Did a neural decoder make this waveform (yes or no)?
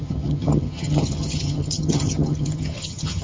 yes